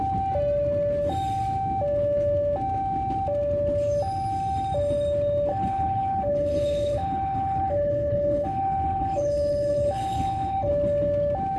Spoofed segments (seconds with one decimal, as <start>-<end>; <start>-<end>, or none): 5.5-10.7